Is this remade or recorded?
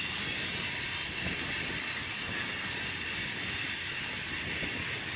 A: recorded